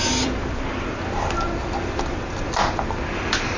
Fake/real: fake